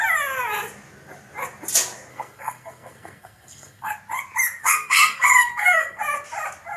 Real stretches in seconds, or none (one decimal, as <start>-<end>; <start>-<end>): 0.0-2.1; 3.9-4.6; 6.0-6.8